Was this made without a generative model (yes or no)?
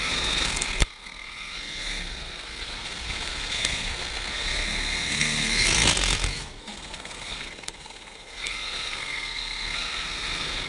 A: no